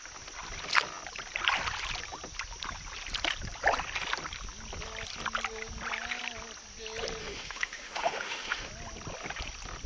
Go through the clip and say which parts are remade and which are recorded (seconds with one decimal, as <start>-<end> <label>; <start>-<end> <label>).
0.0-7.2 recorded; 7.2-8.7 remade; 8.7-9.9 recorded